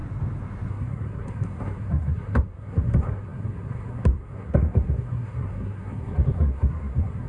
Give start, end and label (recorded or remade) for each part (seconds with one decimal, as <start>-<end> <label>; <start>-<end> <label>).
0.0-0.7 recorded; 0.7-7.3 remade